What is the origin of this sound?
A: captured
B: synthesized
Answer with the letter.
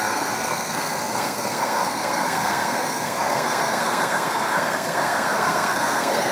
B